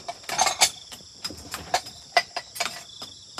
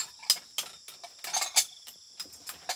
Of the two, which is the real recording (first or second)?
second